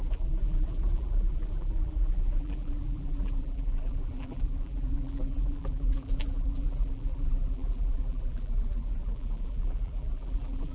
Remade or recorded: remade